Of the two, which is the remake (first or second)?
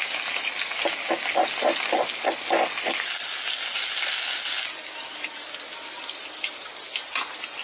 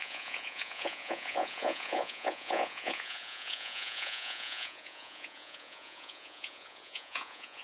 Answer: second